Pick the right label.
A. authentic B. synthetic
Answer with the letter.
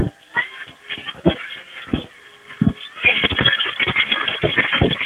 A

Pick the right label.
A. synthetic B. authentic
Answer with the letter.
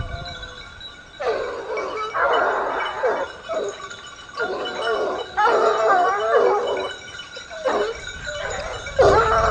B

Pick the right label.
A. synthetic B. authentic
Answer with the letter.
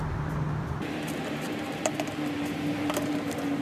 A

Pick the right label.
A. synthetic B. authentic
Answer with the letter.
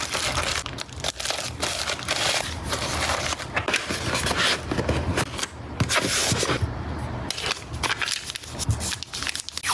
B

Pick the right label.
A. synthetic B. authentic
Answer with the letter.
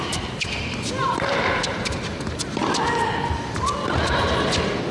B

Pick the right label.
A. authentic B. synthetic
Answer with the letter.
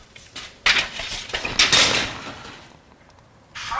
A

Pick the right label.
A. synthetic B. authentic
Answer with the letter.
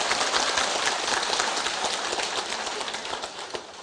B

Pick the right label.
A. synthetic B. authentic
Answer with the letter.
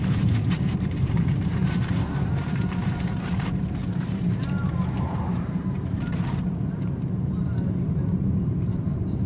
A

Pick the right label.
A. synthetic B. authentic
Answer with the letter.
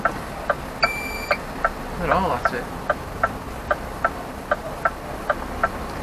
A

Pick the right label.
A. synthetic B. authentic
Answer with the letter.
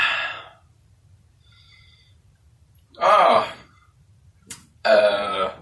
A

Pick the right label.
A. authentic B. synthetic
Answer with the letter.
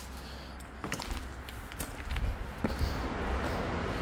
A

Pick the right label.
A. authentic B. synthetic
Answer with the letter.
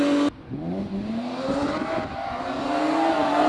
A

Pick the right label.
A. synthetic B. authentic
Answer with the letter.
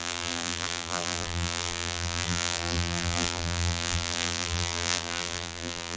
A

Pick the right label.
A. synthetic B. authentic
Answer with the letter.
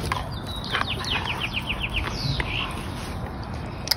B